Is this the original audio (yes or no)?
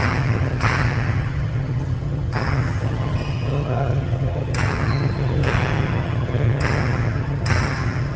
no